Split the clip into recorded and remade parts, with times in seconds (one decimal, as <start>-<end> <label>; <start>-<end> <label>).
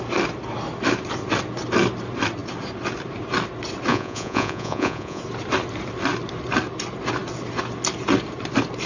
0.0-3.9 recorded; 3.9-5.2 remade; 5.2-8.9 recorded